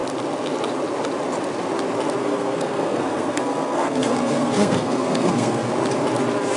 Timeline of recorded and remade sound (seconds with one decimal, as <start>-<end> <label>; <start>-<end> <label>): 0.0-2.2 recorded; 2.2-5.7 remade; 5.7-6.6 recorded